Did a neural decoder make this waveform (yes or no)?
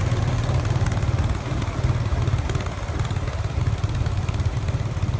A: no